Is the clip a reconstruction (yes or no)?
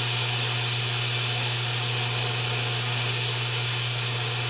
no